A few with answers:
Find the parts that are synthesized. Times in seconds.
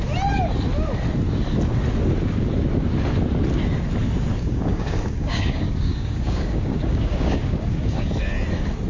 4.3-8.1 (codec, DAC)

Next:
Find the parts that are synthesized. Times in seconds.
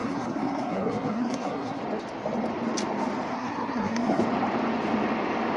0.0-1.8 (codec, SNAC); 3.3-4.2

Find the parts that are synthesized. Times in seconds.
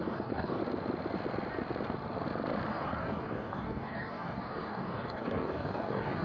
0.0-0.6 (codec, DAC); 2.7-6.2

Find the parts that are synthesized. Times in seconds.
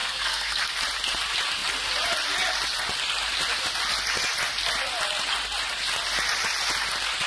0.0-0.7 (codec, SNAC)